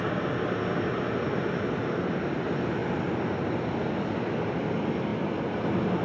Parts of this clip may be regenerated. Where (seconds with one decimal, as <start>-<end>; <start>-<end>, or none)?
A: 5.1-5.6